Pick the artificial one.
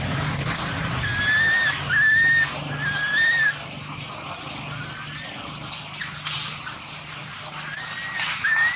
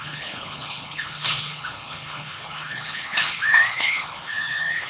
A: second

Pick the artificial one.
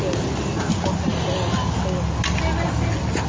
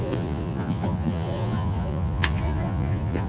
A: second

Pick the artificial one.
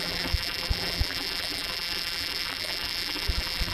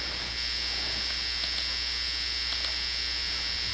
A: first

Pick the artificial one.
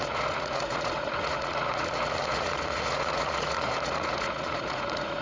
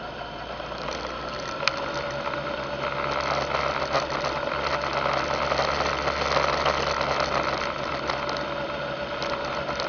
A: first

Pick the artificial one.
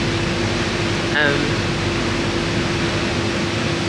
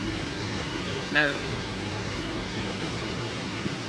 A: second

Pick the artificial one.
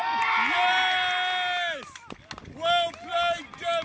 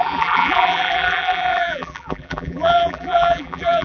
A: second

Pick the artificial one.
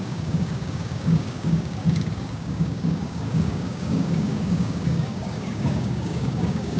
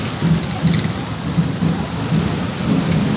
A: first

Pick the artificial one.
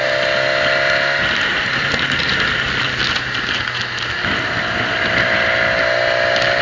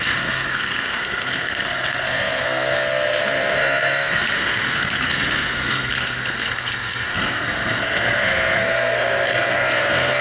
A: second